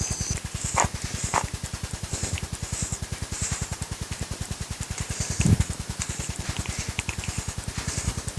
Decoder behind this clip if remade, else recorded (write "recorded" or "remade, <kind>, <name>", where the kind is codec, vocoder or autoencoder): remade, vocoder, BigVGAN v2